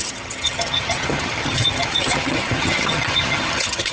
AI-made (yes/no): yes